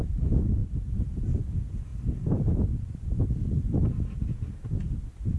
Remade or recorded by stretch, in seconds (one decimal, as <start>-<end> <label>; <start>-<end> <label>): 0.0-5.4 recorded